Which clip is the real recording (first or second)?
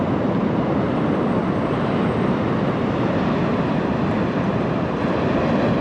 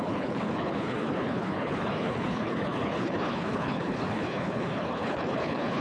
first